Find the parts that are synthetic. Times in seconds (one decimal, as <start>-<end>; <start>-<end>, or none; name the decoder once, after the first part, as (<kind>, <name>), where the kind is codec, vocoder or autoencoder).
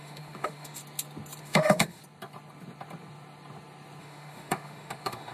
0.0-0.8 (autoencoder, DAC-VAE); 1.4-2.0; 4.0-5.3